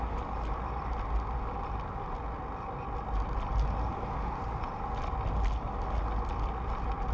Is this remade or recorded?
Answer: recorded